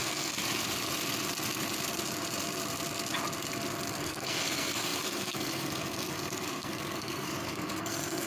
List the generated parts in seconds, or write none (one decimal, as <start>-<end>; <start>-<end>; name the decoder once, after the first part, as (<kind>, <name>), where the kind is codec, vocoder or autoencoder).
0.0-0.4 (codec, SNAC); 4.0-8.3